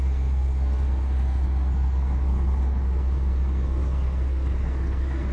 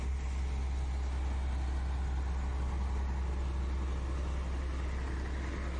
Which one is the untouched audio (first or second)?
second